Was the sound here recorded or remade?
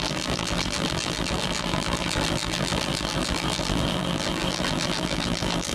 remade